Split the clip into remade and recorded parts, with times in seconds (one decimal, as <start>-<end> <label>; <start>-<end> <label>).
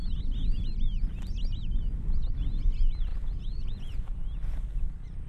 0.0-3.1 recorded; 3.1-4.2 remade; 4.2-5.3 recorded